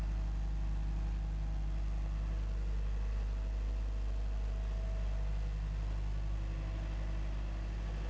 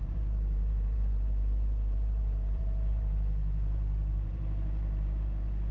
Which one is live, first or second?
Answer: first